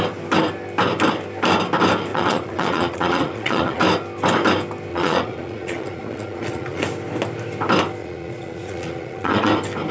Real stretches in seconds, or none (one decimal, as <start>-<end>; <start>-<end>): 0.0-2.1; 3.8-4.9; 6.8-8.0; 9.5-9.9